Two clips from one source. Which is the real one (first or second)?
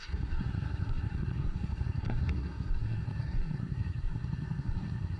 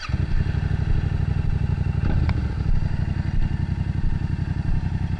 second